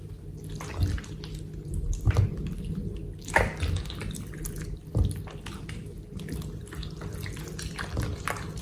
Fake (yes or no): no